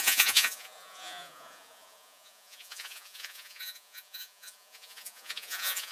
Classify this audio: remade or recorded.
remade